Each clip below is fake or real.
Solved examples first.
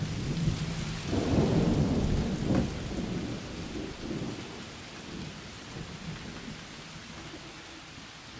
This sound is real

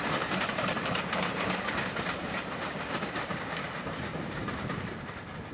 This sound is fake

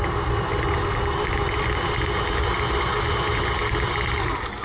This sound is real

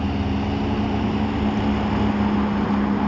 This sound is real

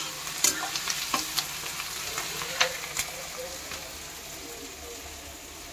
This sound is real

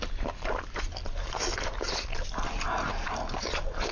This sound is real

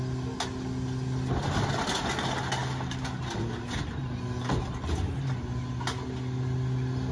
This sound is real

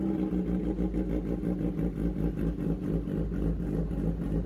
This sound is real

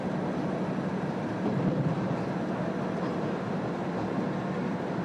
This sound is real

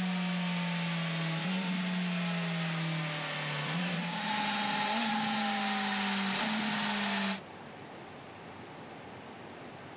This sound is real